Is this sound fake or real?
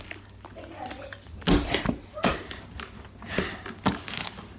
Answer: real